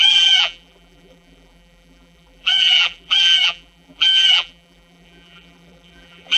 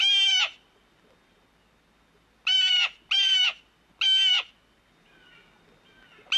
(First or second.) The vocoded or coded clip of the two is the first